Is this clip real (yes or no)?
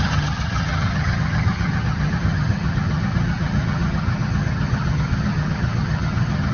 no